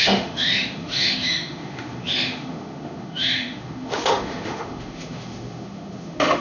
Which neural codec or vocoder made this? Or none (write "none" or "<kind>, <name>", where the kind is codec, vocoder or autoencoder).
autoencoder, DAC-VAE